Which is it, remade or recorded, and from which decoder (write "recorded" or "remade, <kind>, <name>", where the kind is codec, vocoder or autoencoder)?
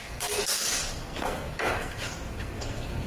remade, codec, SNAC